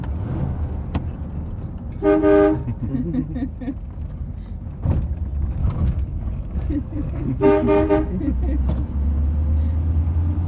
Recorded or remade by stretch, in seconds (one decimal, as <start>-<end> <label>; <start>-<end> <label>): 0.0-5.6 recorded; 5.6-7.9 remade; 7.9-10.5 recorded